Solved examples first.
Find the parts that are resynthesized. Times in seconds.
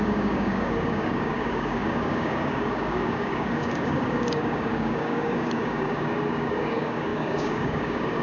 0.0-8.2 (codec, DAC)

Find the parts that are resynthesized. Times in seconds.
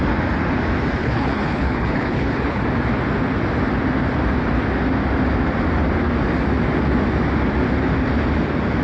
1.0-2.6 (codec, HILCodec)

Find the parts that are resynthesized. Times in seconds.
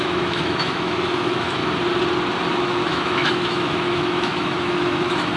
0.0-1.6 (autoencoder, DAC-VAE); 2.5-5.4